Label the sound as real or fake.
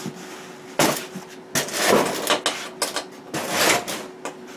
real